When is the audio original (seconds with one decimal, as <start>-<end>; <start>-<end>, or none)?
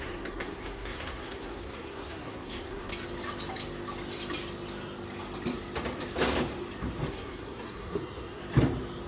2.9-7.1; 8.4-9.1